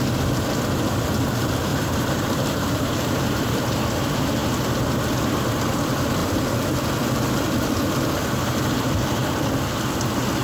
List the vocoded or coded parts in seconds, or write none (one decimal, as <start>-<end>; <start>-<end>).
1.7-3.4